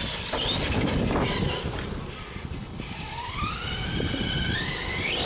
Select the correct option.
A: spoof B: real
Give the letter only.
A